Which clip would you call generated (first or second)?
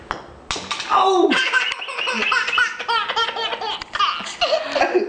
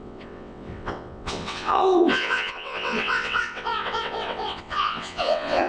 second